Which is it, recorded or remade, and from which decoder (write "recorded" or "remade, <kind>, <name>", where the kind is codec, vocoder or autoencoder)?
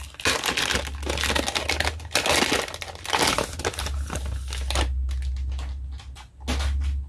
recorded